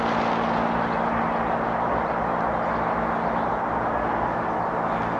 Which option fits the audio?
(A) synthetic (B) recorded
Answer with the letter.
B